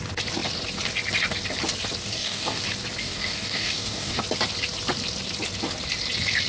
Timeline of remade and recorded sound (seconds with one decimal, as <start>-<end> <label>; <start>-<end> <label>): 0.0-2.1 recorded; 2.1-2.6 remade; 2.6-3.0 recorded; 3.0-4.2 remade; 4.2-6.5 recorded